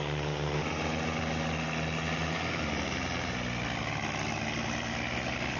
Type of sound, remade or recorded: recorded